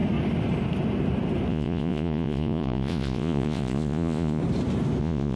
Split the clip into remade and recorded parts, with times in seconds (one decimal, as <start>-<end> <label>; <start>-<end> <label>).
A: 0.0-1.5 recorded; 1.5-4.4 remade; 4.4-5.0 recorded; 5.0-5.4 remade

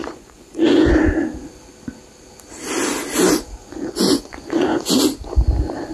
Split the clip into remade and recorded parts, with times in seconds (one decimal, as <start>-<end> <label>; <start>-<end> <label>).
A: 0.0-0.9 remade; 0.9-3.6 recorded; 3.6-4.9 remade; 4.9-5.9 recorded

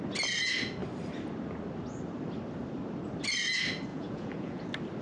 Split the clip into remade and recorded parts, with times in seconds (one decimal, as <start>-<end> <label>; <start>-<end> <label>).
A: 0.0-3.9 recorded; 3.9-4.6 remade; 4.6-5.0 recorded

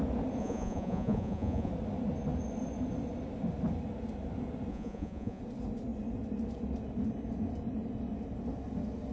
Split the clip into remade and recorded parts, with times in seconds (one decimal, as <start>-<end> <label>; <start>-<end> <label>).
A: 0.0-0.4 recorded; 0.4-1.7 remade; 1.7-4.7 recorded; 4.7-5.4 remade; 5.4-9.1 recorded

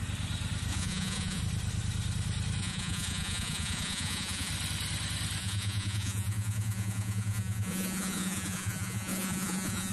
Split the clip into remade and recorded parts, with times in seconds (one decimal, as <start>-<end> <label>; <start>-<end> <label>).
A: 0.0-0.7 recorded; 0.7-1.4 remade; 1.4-2.6 recorded; 2.6-4.5 remade; 4.5-5.4 recorded; 5.4-9.9 remade

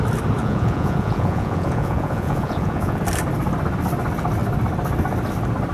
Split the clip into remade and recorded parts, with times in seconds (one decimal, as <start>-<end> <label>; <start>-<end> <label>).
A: 0.0-0.4 recorded; 0.4-3.0 remade; 3.0-5.7 recorded

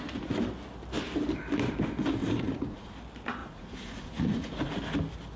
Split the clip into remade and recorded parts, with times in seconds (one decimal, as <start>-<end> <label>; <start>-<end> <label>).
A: 0.0-2.2 recorded; 2.2-2.9 remade; 2.9-3.4 recorded; 3.4-4.7 remade; 4.7-5.4 recorded